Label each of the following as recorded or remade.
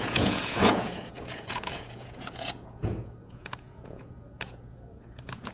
remade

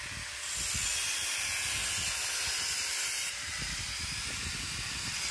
recorded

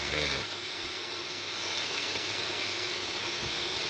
remade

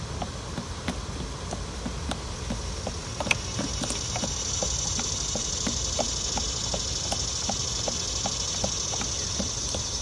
recorded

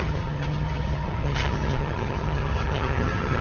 remade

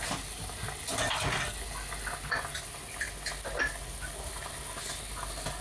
recorded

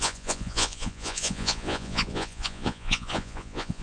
remade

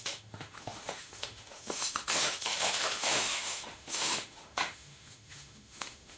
remade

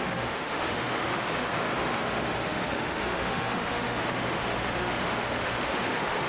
remade